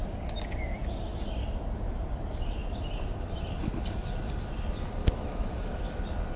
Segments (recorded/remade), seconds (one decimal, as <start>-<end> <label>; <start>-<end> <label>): 0.0-5.0 recorded; 5.0-6.0 remade; 6.0-6.4 recorded

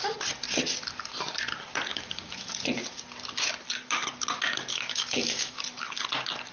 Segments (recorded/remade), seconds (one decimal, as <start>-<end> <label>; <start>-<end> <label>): 0.0-1.9 recorded; 1.9-2.5 remade; 2.5-4.7 recorded; 4.7-5.6 remade; 5.6-6.5 recorded

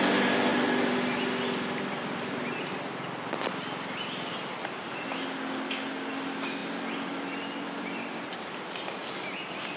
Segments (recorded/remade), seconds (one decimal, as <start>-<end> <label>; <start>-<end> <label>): 0.0-9.8 recorded

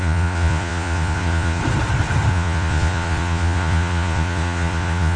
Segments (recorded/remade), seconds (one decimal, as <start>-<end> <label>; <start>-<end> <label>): 0.0-1.6 remade; 1.6-2.3 recorded; 2.3-5.2 remade

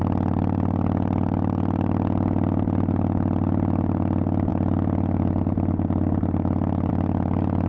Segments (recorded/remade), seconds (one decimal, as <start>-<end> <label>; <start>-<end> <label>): 0.0-7.7 recorded